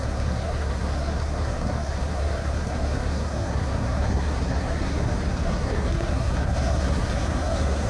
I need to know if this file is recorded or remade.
remade